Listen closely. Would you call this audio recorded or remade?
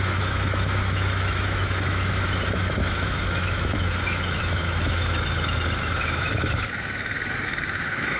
remade